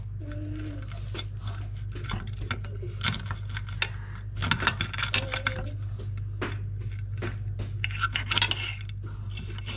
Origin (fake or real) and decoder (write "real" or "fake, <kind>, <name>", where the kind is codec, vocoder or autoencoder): real